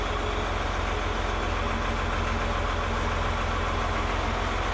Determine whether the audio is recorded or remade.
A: recorded